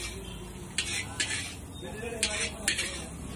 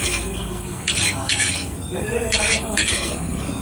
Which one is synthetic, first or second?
second